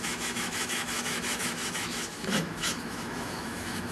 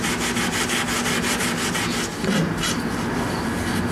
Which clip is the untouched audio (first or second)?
second